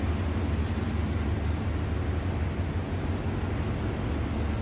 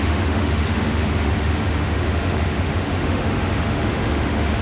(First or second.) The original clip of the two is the first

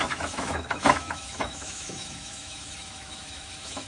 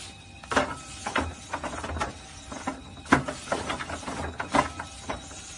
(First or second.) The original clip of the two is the second